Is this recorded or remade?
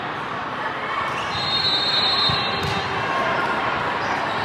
recorded